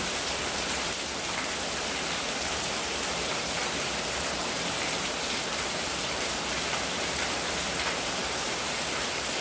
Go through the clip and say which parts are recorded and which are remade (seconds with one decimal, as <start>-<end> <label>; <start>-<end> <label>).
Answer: 0.0-3.6 remade; 3.6-4.4 recorded; 4.4-9.4 remade